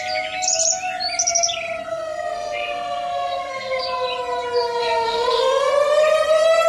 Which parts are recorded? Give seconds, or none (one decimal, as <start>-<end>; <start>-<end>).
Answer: 0.0-1.9; 3.8-4.8; 5.7-6.7